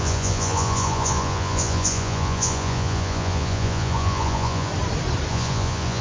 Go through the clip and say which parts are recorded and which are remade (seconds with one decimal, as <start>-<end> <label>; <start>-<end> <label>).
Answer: 0.0-4.7 remade; 4.7-5.3 recorded; 5.3-6.0 remade